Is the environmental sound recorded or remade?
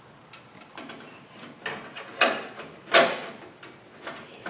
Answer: recorded